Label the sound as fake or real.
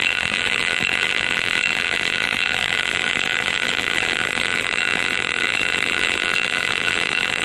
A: fake